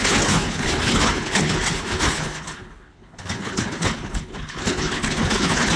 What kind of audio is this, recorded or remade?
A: remade